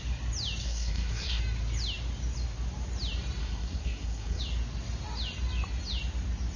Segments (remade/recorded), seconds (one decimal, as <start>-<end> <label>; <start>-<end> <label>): 0.0-0.6 recorded; 0.6-1.4 remade; 1.4-3.4 recorded; 3.4-4.4 remade; 4.4-6.6 recorded